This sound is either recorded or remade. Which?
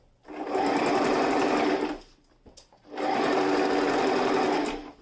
recorded